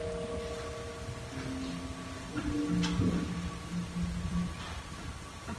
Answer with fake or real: real